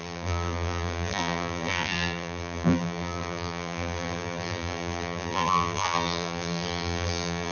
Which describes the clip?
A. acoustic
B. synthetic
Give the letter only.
B